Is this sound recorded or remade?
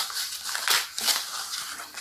remade